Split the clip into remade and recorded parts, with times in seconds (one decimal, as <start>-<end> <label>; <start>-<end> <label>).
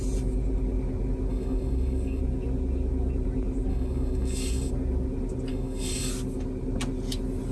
0.0-1.3 recorded; 1.3-2.2 remade; 2.2-3.7 recorded; 3.7-4.7 remade; 4.7-5.5 recorded; 5.5-6.1 remade; 6.1-7.5 recorded